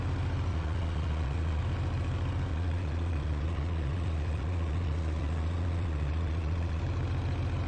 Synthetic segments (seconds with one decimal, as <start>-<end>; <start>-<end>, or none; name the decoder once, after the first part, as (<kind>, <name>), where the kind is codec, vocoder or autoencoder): 0.5-1.6 (vocoder, Vocos); 2.5-6.8